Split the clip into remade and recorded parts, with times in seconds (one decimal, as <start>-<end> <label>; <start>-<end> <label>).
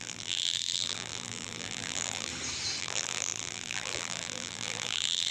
0.0-2.3 remade; 2.3-2.8 recorded; 2.8-5.3 remade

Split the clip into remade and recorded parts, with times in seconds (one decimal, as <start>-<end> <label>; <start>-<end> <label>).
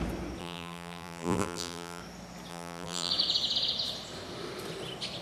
0.0-0.4 recorded; 0.4-2.0 remade; 2.0-2.5 recorded; 2.5-3.1 remade; 3.1-5.2 recorded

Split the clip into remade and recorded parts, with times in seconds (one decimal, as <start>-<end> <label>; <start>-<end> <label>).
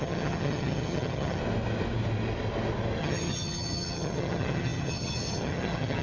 0.0-1.4 remade; 1.4-3.0 recorded; 3.0-6.0 remade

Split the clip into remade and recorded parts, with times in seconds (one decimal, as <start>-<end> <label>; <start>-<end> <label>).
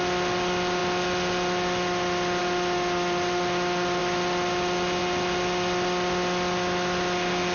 0.0-7.5 recorded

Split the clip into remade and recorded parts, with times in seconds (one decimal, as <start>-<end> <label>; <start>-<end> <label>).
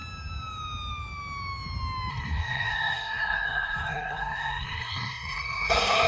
0.0-2.1 recorded; 2.1-6.1 remade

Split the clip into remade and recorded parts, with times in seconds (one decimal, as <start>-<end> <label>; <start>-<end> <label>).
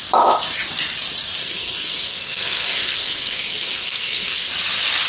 0.0-1.4 recorded; 1.4-4.5 remade; 4.5-5.1 recorded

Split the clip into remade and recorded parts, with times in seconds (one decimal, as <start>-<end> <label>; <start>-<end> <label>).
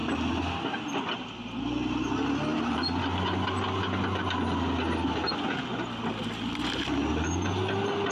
0.0-2.5 recorded; 2.5-3.0 remade; 3.0-8.1 recorded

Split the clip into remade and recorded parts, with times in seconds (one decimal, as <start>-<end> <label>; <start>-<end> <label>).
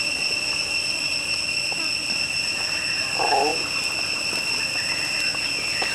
0.0-5.9 recorded